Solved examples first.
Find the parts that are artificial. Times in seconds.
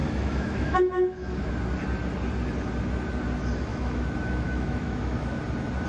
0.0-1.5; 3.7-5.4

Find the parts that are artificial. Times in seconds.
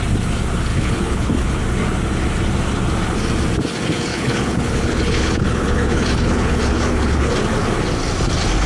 0.7-1.6; 4.1-7.3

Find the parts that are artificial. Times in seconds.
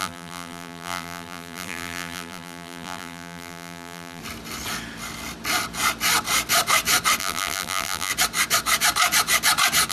0.0-4.2; 7.2-8.1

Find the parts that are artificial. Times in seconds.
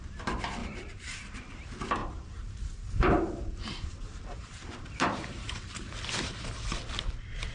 0.6-1.4; 2.0-5.7